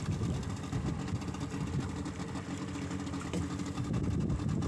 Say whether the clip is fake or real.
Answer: real